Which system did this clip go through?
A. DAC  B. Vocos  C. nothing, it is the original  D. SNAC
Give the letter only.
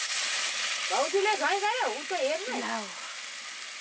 C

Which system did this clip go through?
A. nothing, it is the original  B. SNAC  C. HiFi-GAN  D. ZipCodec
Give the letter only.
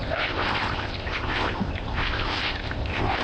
D